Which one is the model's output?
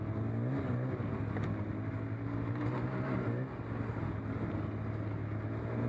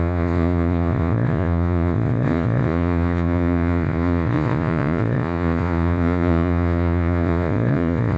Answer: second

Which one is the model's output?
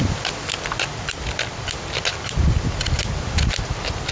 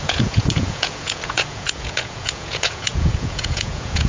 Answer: second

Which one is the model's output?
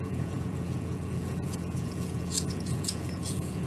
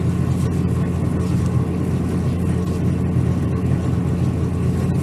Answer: first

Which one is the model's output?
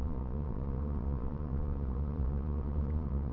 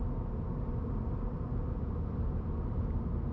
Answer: first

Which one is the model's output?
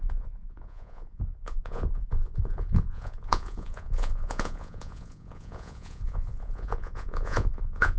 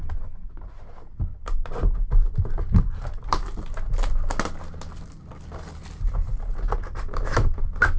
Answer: first